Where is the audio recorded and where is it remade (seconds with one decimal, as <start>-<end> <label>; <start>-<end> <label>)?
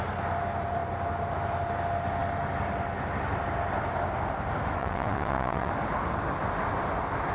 0.0-4.8 recorded; 4.8-5.7 remade; 5.7-7.3 recorded